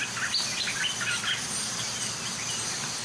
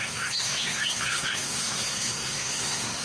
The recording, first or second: first